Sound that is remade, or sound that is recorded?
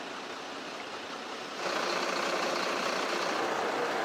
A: recorded